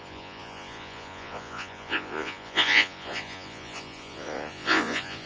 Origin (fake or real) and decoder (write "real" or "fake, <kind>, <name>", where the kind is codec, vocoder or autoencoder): fake, vocoder, Vocos